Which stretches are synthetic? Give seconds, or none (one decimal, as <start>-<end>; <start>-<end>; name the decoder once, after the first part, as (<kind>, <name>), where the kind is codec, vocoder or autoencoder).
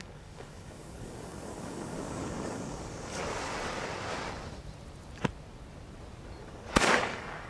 0.0-3.2 (codec, DAC); 6.4-7.5